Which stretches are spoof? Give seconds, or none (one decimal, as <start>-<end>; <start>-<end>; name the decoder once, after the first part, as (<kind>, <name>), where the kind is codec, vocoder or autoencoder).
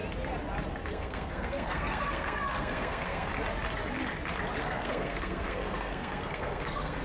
0.9-3.3 (codec, SNAC); 4.6-7.0